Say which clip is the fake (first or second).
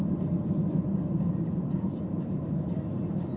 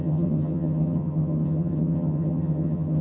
second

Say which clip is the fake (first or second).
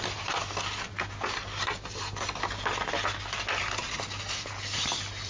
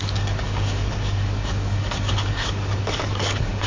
second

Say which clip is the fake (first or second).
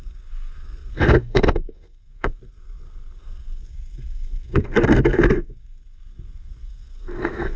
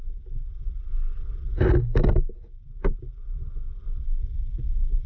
first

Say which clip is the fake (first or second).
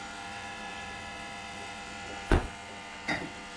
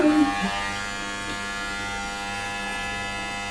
first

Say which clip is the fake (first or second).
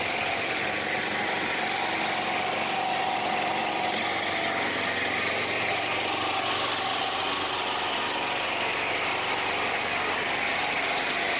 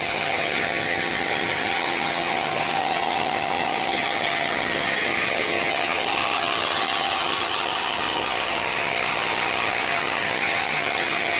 second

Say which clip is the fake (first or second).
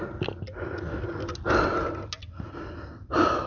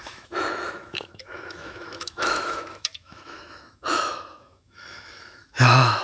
second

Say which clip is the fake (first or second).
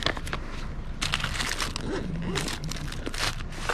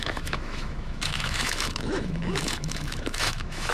second